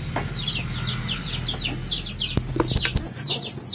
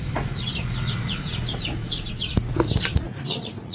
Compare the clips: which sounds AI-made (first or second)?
second